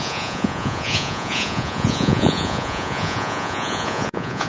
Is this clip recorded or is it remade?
remade